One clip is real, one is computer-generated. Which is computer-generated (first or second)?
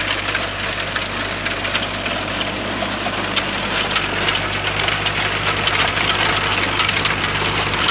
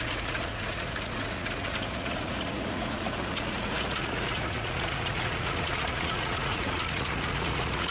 second